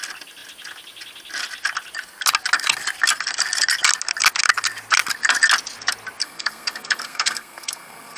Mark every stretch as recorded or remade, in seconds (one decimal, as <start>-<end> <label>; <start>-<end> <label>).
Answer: 0.0-6.2 recorded; 6.2-8.2 remade